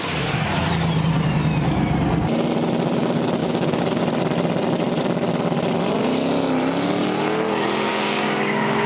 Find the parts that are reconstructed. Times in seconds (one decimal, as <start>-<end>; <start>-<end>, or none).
3.4-4.0; 7.9-8.9